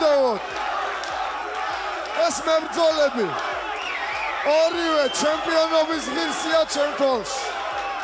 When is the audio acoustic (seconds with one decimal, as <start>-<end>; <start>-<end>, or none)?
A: 0.0-8.0